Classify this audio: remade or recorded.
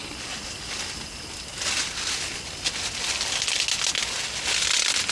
recorded